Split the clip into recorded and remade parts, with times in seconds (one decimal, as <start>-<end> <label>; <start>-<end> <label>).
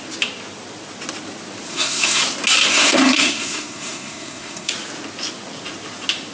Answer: 0.0-1.7 recorded; 1.7-2.2 remade; 2.2-2.7 recorded; 2.7-4.7 remade; 4.7-6.3 recorded